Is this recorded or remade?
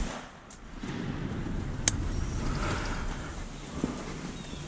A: recorded